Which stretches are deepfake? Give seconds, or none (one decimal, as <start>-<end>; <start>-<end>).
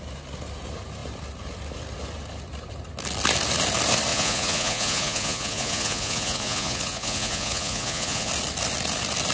4.1-8.3